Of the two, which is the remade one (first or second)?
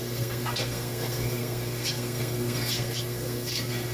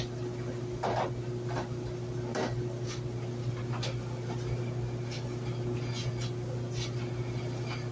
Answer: first